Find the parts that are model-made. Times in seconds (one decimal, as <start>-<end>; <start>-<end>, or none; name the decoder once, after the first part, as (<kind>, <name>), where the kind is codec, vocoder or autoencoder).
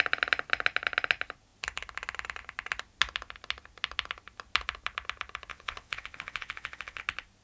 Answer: 5.5-7.0 (vocoder, WaveNeXt)